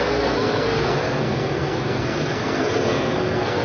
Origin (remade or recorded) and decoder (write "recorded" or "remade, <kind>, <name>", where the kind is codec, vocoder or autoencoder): remade, codec, SNAC